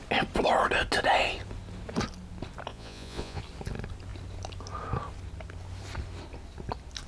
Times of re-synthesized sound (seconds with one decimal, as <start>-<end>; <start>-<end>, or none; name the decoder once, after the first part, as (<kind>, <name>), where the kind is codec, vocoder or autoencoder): 2.7-3.4 (vocoder, Vocos)